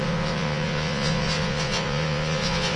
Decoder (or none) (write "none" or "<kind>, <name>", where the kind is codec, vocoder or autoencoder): vocoder, Vocos